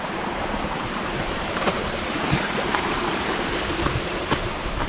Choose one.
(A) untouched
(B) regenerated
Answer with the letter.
B